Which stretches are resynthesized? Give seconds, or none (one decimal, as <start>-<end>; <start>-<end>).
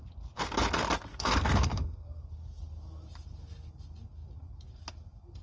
1.1-2.6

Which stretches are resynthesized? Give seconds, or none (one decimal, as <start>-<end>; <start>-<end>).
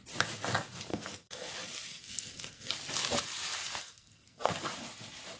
0.9-1.5; 1.9-2.7; 3.8-4.5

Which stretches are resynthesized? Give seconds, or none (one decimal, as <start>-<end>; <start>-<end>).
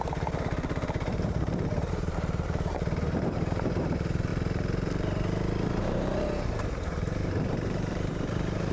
0.0-4.3; 5.8-8.7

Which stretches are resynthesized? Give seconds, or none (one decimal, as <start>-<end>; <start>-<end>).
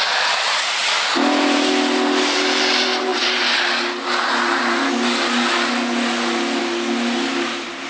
none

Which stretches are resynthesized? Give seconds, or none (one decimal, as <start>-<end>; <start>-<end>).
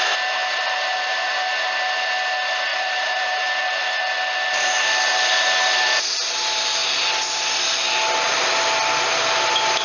0.4-1.5; 2.7-3.6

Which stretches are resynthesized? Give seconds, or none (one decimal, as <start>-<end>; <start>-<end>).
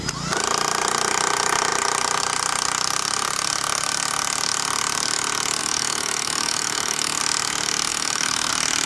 5.6-7.2; 7.9-8.5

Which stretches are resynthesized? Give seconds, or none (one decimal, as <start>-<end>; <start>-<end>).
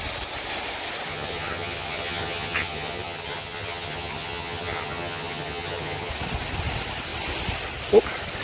1.1-6.1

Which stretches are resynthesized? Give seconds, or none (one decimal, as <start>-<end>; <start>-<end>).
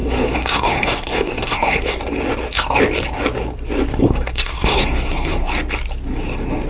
0.0-2.0; 4.0-5.5